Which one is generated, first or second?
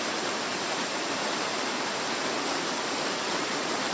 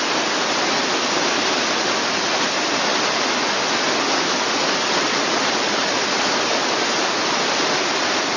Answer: first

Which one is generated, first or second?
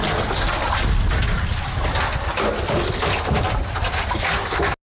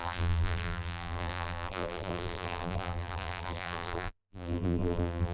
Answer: second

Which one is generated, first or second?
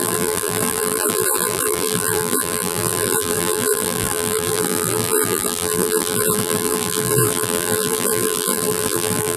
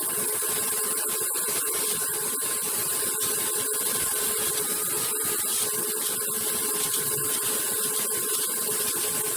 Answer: first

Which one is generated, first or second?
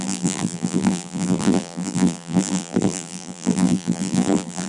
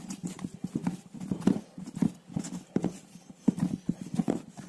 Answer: first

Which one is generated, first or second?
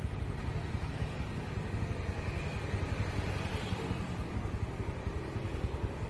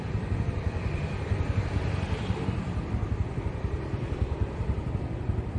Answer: second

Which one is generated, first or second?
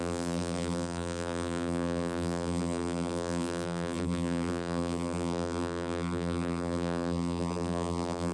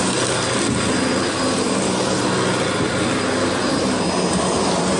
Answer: first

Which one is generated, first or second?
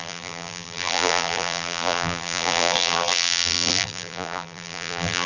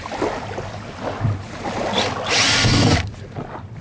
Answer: first